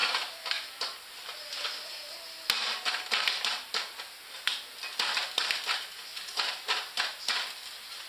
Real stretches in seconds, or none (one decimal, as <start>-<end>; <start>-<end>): 0.0-8.1